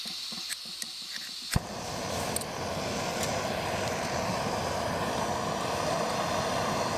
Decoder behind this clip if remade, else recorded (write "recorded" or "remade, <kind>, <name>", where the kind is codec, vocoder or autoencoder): recorded